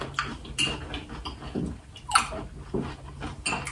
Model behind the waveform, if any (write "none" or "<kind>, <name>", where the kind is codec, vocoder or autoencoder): none